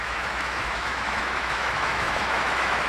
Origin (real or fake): fake